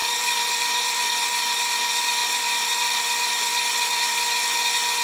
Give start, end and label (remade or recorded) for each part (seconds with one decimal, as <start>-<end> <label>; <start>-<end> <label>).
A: 0.0-1.3 remade; 1.3-2.2 recorded; 2.2-4.6 remade; 4.6-5.0 recorded